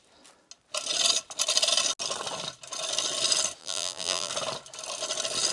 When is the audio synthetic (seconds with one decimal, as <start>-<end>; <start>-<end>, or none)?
3.6-4.3